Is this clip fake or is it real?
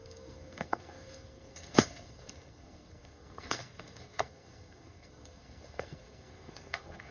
fake